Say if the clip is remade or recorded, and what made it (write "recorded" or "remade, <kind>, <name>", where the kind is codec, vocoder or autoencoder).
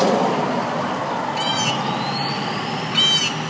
recorded